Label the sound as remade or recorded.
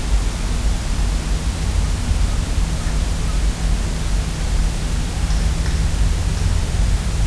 recorded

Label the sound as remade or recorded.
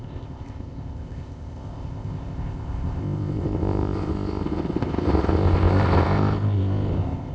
remade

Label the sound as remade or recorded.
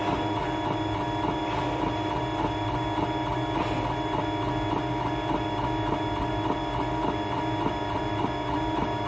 recorded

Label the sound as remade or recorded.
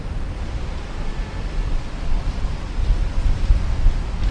recorded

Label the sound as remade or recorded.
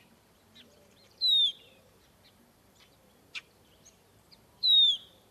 remade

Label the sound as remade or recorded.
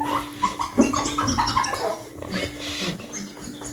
recorded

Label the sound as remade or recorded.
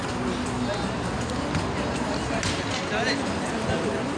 recorded